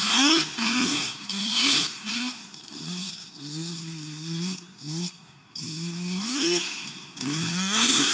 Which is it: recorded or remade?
remade